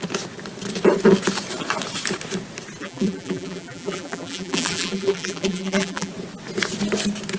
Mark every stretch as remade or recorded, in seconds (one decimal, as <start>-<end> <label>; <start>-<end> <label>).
0.0-2.8 recorded; 2.8-6.1 remade; 6.1-7.4 recorded